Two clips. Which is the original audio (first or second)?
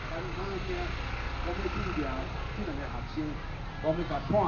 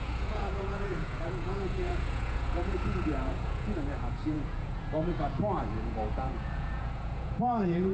first